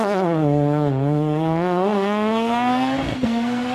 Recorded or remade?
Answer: remade